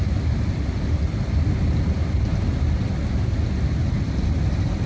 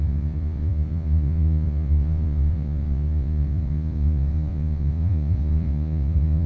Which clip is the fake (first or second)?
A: second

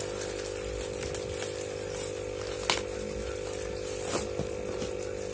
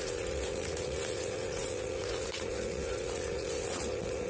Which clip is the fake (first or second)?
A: second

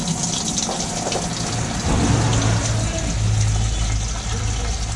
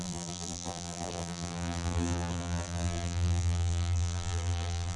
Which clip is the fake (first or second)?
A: second